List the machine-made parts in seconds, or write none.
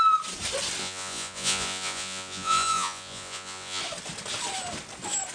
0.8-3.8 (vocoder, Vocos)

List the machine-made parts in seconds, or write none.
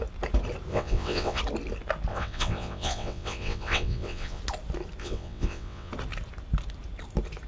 0.7-1.4 (vocoder, WaveNeXt); 2.1-4.4; 5.0-5.9